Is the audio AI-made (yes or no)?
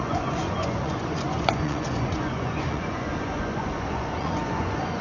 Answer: yes